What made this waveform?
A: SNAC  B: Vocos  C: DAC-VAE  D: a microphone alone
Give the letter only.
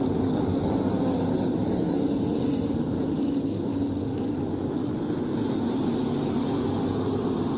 D